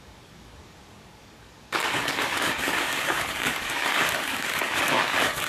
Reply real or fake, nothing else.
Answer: fake